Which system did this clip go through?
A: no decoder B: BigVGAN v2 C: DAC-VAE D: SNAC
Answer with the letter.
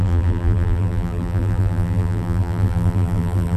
B